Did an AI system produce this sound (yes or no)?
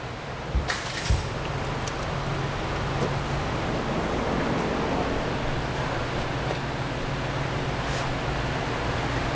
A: no